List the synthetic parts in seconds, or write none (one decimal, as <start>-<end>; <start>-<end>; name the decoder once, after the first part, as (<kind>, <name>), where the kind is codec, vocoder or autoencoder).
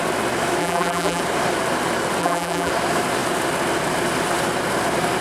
0.6-1.2 (vocoder, BigVGAN v2); 2.2-2.7